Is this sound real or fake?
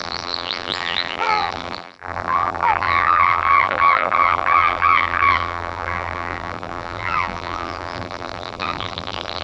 fake